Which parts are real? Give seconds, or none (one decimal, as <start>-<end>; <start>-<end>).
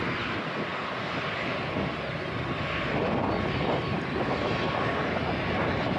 0.0-6.0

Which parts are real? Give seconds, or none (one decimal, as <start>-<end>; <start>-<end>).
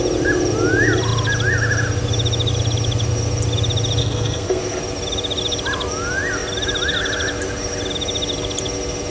0.0-4.0; 4.6-9.1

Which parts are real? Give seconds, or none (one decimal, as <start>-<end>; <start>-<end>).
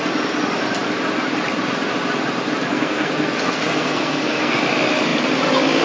0.0-2.7; 4.6-5.8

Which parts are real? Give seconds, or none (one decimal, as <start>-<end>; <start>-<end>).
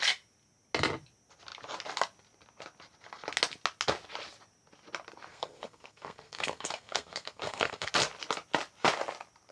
0.0-5.3; 7.9-9.5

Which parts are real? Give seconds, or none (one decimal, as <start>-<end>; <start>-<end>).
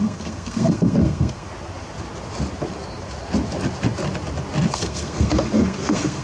1.5-4.7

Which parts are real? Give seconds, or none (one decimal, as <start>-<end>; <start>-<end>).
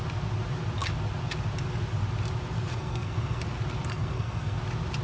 0.0-2.7; 3.4-3.9; 4.6-5.0